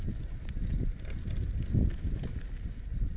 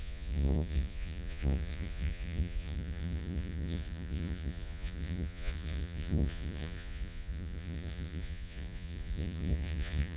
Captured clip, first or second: first